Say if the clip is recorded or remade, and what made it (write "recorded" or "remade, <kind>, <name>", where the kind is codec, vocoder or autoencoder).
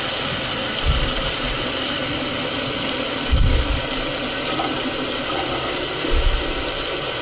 recorded